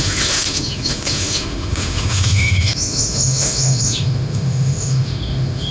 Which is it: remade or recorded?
remade